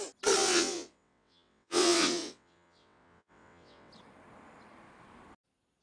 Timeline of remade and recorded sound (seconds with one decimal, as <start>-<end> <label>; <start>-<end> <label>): 0.0-0.4 recorded; 0.4-3.9 remade; 3.9-5.8 recorded